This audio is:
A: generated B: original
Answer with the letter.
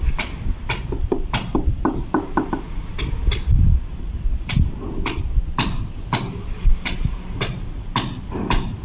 B